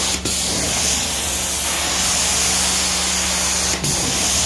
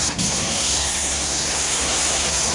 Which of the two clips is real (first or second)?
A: first